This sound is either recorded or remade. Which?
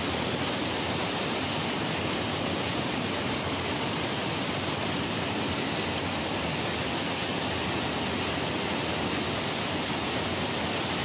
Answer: recorded